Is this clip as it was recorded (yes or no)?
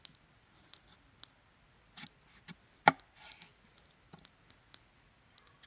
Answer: yes